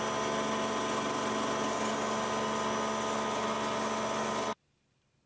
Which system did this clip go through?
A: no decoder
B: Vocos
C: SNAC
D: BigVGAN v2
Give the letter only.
A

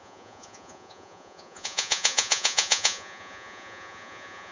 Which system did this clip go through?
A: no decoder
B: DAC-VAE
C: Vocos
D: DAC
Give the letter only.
C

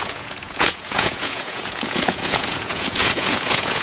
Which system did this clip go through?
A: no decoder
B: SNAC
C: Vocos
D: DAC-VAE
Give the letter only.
C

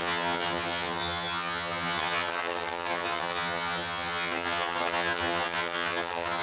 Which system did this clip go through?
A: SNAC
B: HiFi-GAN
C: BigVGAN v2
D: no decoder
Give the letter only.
B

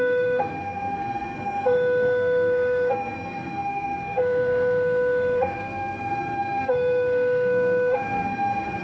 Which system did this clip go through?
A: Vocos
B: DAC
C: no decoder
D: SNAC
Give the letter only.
D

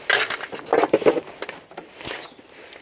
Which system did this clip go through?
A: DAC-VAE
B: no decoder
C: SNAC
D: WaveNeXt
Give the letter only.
B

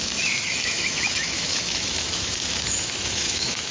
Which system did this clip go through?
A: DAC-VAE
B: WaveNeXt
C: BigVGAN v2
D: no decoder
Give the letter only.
A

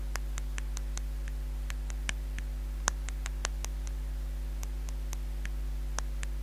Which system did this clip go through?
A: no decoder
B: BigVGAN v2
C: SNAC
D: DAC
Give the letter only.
A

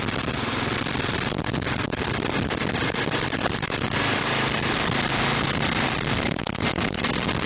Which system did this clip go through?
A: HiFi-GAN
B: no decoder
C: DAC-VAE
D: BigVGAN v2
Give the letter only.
B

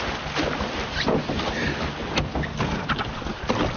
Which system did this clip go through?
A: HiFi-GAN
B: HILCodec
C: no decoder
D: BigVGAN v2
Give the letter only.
C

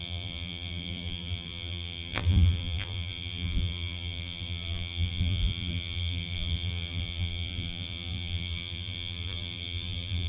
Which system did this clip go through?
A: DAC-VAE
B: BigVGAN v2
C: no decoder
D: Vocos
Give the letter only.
B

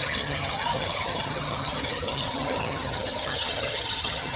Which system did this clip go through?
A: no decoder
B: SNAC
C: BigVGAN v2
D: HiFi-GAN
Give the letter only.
D